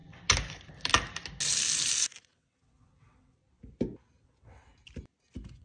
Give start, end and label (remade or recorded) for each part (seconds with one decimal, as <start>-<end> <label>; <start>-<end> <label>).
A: 0.0-2.2 recorded; 2.2-3.4 remade; 3.4-4.2 recorded; 4.2-4.7 remade; 4.7-5.6 recorded